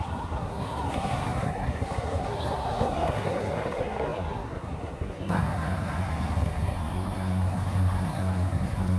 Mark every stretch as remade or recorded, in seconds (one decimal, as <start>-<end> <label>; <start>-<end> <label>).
0.0-9.0 remade